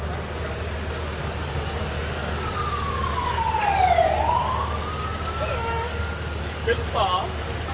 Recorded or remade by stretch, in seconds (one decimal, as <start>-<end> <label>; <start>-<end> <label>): 0.0-1.2 recorded; 1.2-1.8 remade; 1.8-2.2 recorded; 2.2-3.5 remade; 3.5-5.5 recorded; 5.5-6.9 remade; 6.9-7.7 recorded